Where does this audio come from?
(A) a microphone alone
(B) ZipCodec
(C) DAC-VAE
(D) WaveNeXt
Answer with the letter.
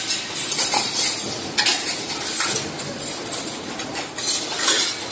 A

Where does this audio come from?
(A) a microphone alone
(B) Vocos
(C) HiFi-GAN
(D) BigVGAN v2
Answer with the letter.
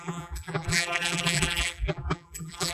D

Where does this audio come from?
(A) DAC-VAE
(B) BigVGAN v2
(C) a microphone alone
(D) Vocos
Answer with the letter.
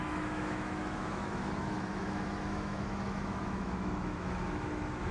A